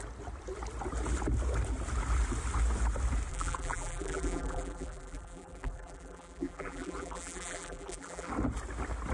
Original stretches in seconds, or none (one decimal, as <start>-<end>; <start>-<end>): 0.0-3.3; 8.3-9.1